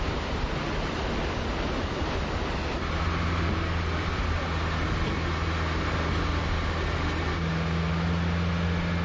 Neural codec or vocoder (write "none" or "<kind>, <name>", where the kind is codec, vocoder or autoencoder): none